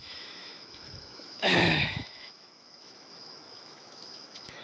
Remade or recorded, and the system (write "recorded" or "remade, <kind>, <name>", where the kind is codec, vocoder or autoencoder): remade, autoencoder, DAC-VAE